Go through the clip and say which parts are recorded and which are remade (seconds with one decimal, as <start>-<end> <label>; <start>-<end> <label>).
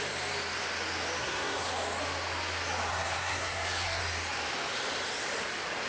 0.0-1.2 recorded; 1.2-1.7 remade; 1.7-2.9 recorded; 2.9-4.0 remade; 4.0-5.9 recorded